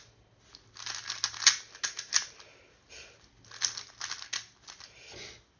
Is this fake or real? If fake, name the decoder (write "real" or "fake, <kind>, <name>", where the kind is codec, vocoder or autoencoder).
real